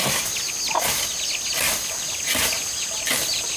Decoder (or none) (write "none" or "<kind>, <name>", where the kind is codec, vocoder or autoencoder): none